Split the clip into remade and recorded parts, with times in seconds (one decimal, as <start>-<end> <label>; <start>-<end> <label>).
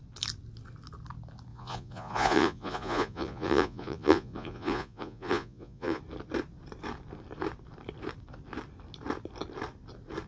0.0-1.5 recorded; 1.5-6.0 remade; 6.0-10.3 recorded